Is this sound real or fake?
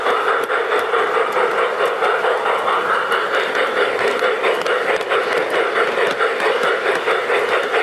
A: real